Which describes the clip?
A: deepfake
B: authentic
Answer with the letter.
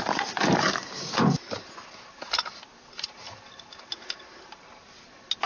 B